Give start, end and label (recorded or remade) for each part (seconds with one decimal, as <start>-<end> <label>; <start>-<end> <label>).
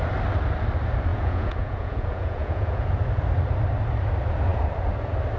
0.0-1.1 recorded; 1.1-2.9 remade; 2.9-5.4 recorded